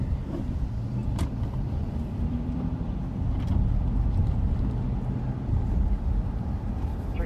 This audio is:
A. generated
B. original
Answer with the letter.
A